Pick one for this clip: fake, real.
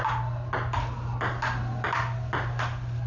real